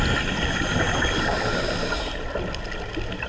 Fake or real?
real